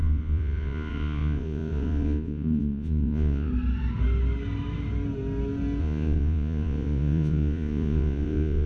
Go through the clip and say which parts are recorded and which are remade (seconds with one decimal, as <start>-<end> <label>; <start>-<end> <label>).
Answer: 0.0-3.5 remade; 3.5-5.8 recorded; 5.8-8.7 remade